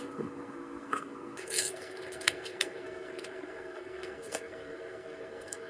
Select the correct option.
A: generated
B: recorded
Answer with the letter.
A